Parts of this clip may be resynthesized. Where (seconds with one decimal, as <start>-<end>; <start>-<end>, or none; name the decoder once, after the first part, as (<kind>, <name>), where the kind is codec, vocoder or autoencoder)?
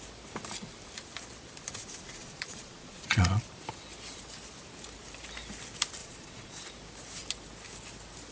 2.2-3.4 (vocoder, Vocos); 6.0-6.6